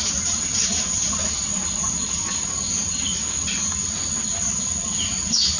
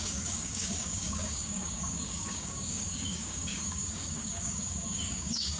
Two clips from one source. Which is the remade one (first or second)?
second